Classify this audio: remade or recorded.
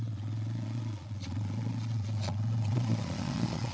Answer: remade